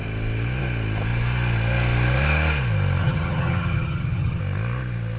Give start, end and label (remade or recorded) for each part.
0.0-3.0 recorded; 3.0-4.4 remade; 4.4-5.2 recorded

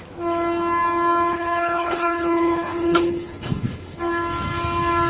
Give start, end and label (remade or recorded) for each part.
0.0-1.3 recorded; 1.3-4.0 remade; 4.0-5.1 recorded

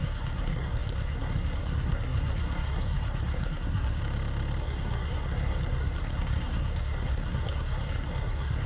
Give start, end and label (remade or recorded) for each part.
0.0-4.0 remade; 4.0-4.6 recorded; 4.6-8.7 remade

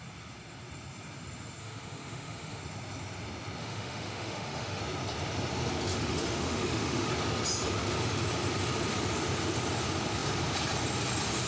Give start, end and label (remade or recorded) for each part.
0.0-1.6 recorded; 1.6-2.6 remade; 2.6-3.6 recorded; 3.6-4.8 remade; 4.8-5.9 recorded; 5.9-7.1 remade; 7.1-11.5 recorded

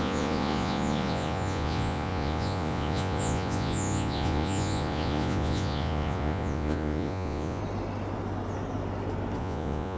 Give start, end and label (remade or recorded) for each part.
0.0-7.6 remade; 7.6-9.4 recorded; 9.4-10.0 remade

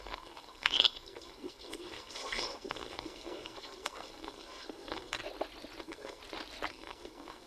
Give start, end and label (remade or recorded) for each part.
0.0-5.2 remade; 5.2-5.8 recorded; 5.8-6.2 remade; 6.2-6.7 recorded; 6.7-7.5 remade

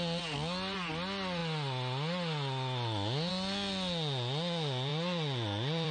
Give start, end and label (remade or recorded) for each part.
0.0-4.9 recorded; 4.9-5.9 remade